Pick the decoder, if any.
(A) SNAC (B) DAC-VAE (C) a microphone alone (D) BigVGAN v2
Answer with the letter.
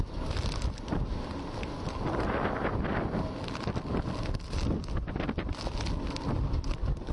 C